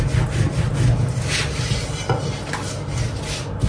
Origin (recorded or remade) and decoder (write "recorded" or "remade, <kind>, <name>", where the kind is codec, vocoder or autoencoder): recorded